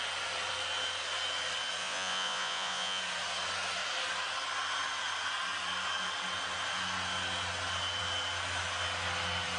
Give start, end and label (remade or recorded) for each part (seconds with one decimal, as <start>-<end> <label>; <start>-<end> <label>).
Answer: 0.0-1.8 recorded; 1.8-3.0 remade; 3.0-9.6 recorded